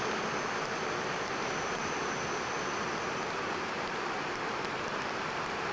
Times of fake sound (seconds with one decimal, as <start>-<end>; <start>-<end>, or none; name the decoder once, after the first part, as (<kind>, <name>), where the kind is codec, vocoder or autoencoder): none